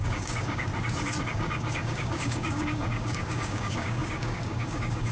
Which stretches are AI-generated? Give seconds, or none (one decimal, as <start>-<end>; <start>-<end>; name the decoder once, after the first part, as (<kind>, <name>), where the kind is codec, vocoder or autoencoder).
0.0-0.7 (codec, DAC); 1.2-5.1